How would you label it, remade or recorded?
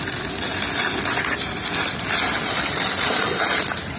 recorded